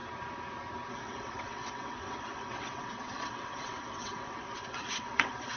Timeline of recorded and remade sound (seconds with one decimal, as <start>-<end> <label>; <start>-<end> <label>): 0.0-0.9 recorded; 0.9-5.6 remade